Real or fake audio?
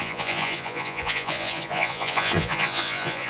fake